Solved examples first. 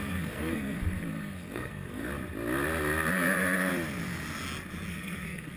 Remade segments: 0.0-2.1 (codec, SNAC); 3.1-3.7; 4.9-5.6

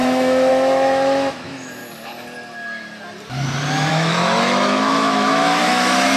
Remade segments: 0.0-1.8 (autoencoder, DAC-VAE); 3.9-6.2

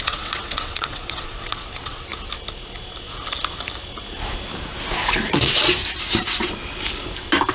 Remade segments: 0.0-2.1 (vocoder, WaveNeXt); 5.3-5.8

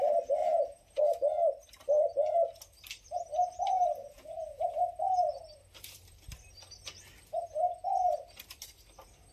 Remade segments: 0.4-1.0 (vocoder, Vocos); 4.0-4.8

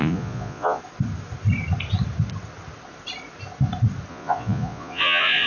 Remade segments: 0.0-0.8 (vocoder, Vocos); 4.1-5.5

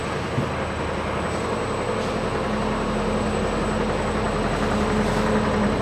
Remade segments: none